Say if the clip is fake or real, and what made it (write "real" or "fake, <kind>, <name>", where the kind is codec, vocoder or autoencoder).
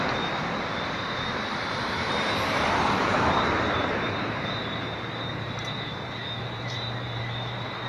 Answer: fake, vocoder, BigVGAN v2